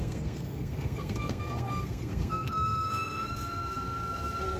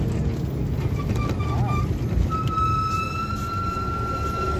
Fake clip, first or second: first